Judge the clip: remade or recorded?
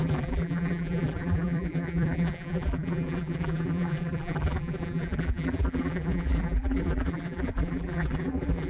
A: remade